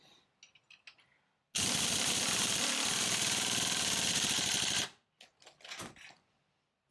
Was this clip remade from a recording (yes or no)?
no